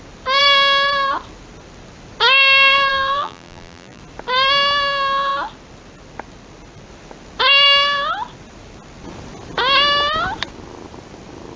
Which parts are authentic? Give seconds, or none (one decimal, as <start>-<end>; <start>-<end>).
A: 0.0-2.9; 4.0-11.6